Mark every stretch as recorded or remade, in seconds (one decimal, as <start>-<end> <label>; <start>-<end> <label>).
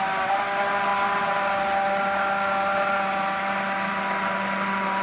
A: 0.0-5.0 recorded